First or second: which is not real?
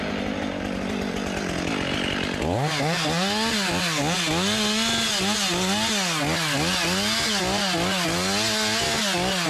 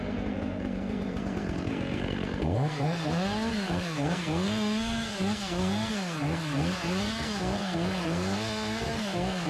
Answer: second